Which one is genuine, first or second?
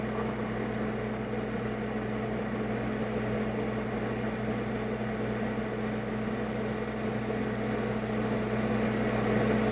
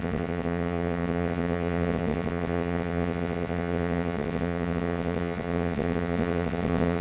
first